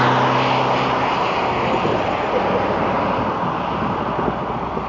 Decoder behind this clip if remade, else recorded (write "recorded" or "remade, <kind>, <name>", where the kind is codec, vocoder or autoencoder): recorded